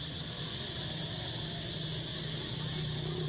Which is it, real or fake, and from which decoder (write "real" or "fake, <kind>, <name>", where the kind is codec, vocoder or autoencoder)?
real